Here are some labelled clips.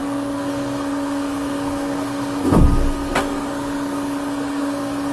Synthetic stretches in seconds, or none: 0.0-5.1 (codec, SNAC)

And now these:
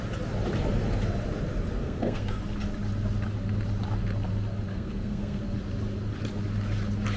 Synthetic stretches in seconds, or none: 1.8-2.4 (codec, SNAC); 4.7-5.4

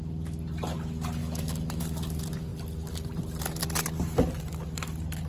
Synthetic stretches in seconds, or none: 1.2-1.8 (autoencoder, DAC-VAE)

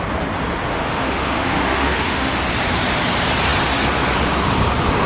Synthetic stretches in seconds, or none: 0.7-2.4 (autoencoder, DAC-VAE)

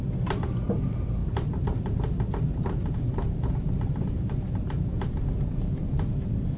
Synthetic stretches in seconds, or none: 1.2-5.2 (vocoder, BigVGAN v2)